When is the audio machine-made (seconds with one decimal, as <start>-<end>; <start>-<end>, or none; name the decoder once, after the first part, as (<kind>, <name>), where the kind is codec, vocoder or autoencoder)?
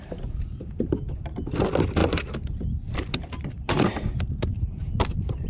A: 2.0-5.5 (vocoder, BigVGAN v2)